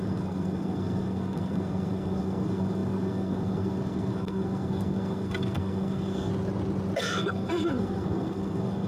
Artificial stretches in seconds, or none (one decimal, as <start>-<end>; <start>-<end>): 0.0-6.3; 7.0-8.9